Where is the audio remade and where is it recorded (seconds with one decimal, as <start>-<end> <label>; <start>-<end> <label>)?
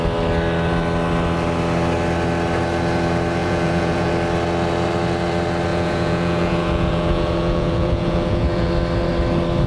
0.0-3.4 recorded; 3.4-4.1 remade; 4.1-5.7 recorded; 5.7-8.7 remade; 8.7-9.7 recorded